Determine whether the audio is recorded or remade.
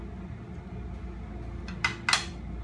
recorded